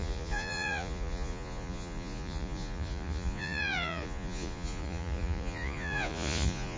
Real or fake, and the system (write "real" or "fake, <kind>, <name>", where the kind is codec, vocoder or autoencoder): fake, vocoder, Vocos